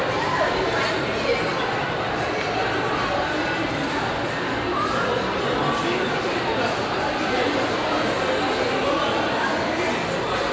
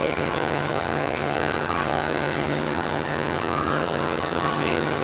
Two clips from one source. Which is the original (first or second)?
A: first